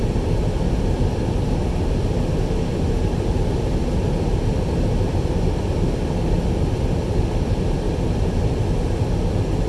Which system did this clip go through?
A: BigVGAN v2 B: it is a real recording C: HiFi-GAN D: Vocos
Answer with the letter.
A